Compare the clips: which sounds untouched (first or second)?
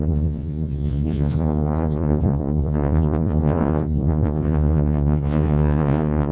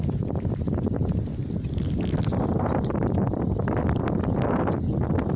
second